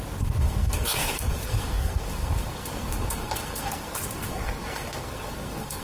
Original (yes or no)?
no